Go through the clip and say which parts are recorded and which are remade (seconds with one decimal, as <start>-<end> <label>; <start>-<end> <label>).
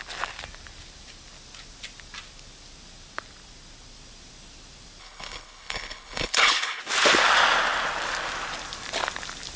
0.0-5.0 recorded; 5.0-6.8 remade; 6.8-9.6 recorded